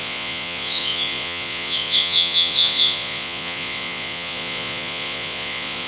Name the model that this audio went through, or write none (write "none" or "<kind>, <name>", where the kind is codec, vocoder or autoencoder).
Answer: vocoder, Vocos